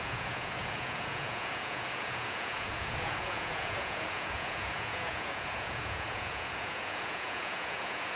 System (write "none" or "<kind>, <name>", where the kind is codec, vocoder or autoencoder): vocoder, Vocos